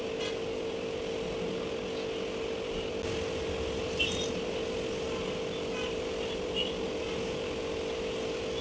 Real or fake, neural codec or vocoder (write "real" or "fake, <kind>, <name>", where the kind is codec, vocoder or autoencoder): real